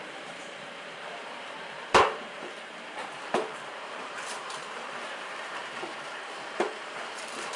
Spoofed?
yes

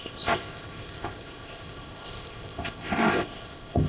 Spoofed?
yes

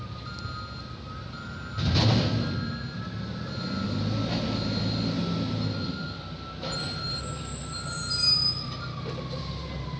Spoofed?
no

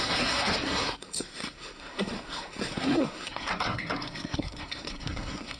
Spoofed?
yes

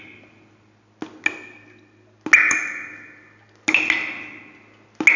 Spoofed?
no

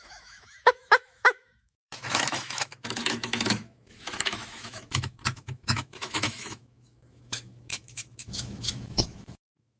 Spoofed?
yes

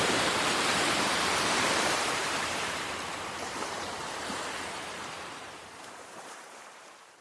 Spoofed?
yes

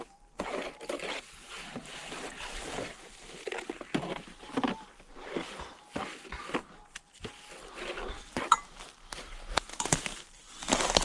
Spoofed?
no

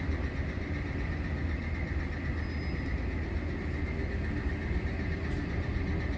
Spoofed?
no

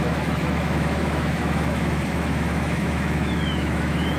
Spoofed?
yes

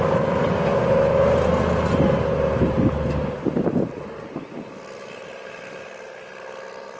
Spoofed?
no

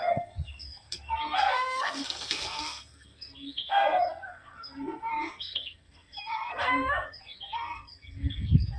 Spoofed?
yes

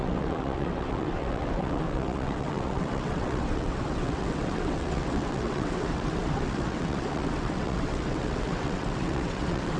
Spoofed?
yes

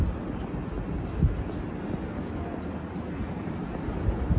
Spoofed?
no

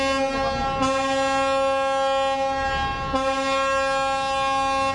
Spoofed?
no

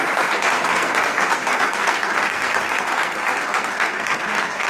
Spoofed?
yes